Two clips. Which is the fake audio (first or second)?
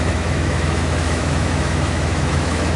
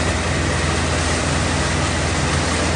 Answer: first